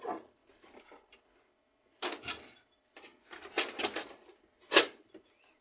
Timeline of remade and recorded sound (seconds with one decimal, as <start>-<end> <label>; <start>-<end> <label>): 0.0-5.6 recorded